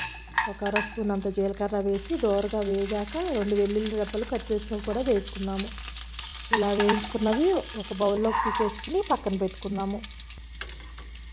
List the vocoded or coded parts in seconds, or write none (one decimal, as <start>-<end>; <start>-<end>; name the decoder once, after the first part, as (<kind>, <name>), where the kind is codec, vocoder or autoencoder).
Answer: 6.3-9.8 (vocoder, BigVGAN v2)